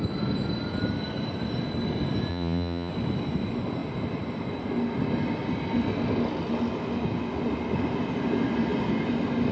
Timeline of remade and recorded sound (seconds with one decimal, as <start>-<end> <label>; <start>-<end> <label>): 0.0-2.3 recorded; 2.3-2.9 remade; 2.9-9.5 recorded